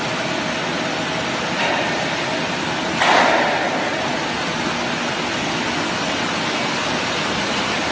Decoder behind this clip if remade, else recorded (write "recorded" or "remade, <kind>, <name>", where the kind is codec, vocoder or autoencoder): recorded